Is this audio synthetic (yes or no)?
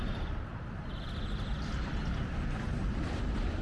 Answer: yes